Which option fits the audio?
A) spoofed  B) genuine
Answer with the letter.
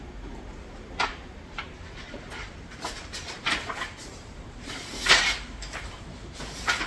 A